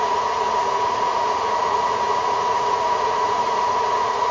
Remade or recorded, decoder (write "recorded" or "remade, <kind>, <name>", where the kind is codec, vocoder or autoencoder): remade, vocoder, Vocos